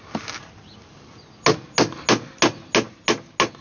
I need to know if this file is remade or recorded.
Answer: recorded